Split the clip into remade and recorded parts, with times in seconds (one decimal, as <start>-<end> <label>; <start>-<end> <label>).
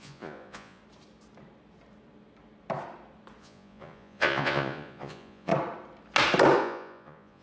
0.0-0.8 remade; 0.8-3.4 recorded; 3.4-5.5 remade; 5.5-6.6 recorded; 6.6-7.4 remade